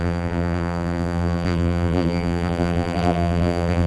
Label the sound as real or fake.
fake